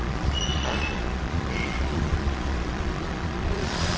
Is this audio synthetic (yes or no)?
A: yes